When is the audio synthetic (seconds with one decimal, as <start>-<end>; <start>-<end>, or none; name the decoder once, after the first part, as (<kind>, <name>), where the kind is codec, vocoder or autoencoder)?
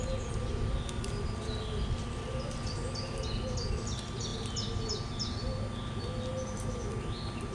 none